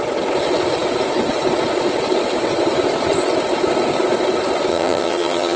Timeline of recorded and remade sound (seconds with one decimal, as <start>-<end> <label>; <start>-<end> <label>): 0.0-4.7 recorded; 4.7-5.6 remade